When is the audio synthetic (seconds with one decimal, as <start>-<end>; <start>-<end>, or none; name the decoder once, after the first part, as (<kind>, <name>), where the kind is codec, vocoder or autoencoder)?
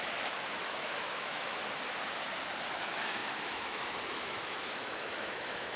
0.0-1.6 (autoencoder, DAC-VAE); 2.8-5.8